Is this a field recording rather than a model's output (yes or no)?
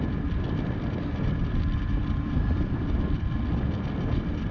no